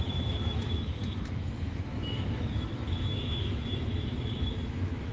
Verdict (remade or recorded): remade